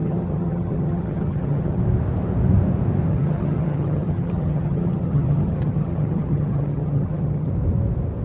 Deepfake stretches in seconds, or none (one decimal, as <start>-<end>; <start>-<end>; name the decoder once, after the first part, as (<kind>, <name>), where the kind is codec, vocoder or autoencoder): 0.0-1.8 (vocoder, HiFi-GAN); 3.1-7.5